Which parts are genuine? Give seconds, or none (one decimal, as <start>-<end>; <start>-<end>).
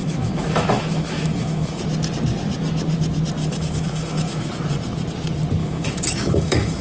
1.8-3.4; 4.5-5.6